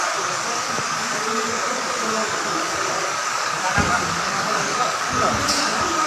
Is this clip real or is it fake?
fake